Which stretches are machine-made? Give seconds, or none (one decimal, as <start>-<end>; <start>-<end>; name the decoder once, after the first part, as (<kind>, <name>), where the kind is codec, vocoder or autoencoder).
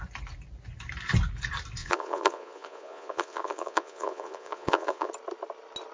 1.8-5.1 (vocoder, Vocos)